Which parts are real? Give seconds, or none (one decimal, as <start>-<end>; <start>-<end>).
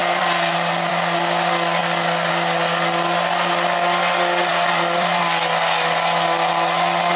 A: 0.9-4.5; 5.2-7.2